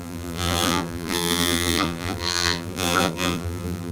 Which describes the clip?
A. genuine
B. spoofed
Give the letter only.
B